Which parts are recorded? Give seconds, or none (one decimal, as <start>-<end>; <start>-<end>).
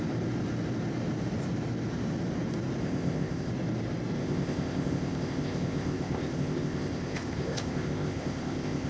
0.0-2.8; 3.5-4.2